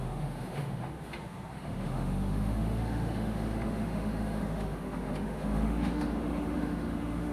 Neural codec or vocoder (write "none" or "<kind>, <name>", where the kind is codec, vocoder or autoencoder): autoencoder, DAC-VAE